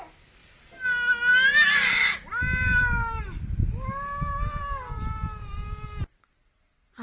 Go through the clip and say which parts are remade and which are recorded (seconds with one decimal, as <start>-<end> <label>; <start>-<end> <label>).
0.0-7.0 recorded